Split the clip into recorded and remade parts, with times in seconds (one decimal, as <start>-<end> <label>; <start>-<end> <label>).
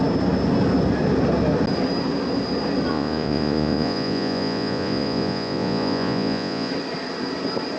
0.0-2.9 recorded; 2.9-6.7 remade; 6.7-7.8 recorded